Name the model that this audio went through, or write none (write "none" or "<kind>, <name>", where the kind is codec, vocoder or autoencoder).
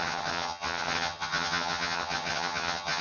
vocoder, HiFi-GAN